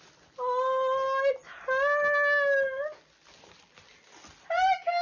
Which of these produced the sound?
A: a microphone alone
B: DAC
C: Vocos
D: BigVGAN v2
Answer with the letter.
A